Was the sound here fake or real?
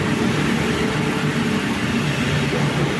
real